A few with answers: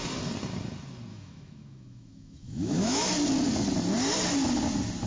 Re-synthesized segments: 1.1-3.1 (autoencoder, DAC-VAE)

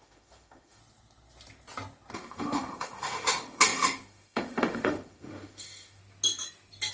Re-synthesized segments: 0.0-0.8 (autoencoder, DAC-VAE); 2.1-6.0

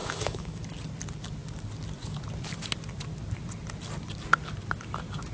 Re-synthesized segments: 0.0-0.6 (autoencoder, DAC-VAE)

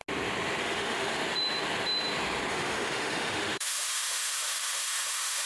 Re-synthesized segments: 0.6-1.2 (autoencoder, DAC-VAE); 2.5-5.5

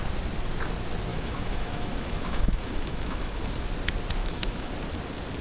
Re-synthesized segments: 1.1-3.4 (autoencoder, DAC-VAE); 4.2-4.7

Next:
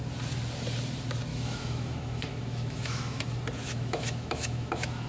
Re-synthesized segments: 1.3-3.2 (autoencoder, DAC-VAE); 3.6-5.1